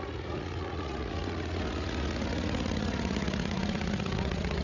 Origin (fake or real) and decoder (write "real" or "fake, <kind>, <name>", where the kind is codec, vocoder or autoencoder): fake, vocoder, Vocos